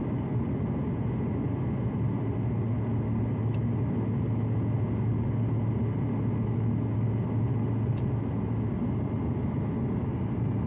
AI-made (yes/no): no